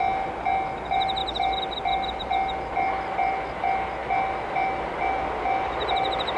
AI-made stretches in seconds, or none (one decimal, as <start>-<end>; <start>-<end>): none